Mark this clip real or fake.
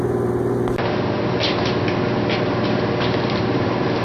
real